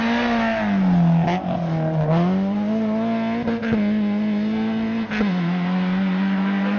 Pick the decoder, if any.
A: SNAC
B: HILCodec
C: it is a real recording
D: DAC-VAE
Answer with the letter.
C